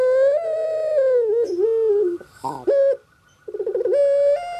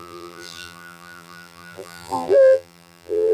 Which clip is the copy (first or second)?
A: second